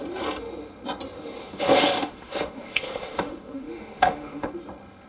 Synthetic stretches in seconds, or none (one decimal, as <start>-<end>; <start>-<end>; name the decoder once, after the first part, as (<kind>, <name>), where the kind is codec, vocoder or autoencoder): 1.4-4.5 (autoencoder, DAC-VAE)